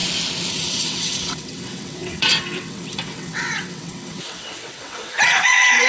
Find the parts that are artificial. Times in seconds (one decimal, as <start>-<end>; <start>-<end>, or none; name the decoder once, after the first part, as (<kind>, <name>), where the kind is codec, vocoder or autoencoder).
0.5-5.9 (vocoder, WaveNeXt)